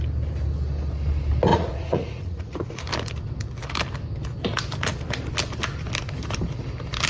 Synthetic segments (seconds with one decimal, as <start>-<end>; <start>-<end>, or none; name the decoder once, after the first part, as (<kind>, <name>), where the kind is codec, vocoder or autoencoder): 1.5-2.9 (vocoder, Vocos)